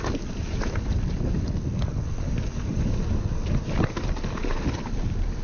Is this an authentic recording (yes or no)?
yes